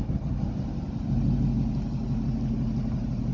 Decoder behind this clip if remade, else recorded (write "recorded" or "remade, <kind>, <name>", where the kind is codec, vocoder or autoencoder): recorded